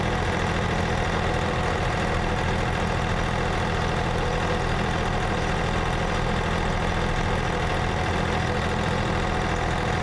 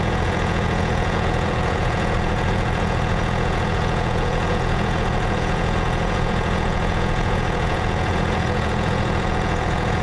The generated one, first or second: second